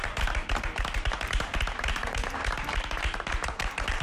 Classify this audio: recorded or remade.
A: remade